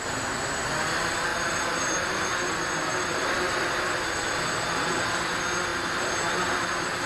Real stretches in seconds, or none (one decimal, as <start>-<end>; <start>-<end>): 0.0-1.3; 4.0-7.1